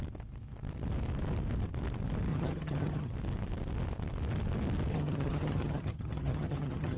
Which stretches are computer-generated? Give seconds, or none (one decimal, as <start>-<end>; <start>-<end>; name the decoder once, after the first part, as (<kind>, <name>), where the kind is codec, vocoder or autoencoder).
2.3-3.1 (vocoder, HiFi-GAN); 4.9-7.0